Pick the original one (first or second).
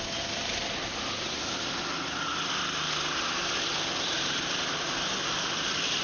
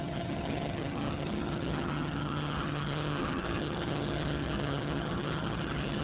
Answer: first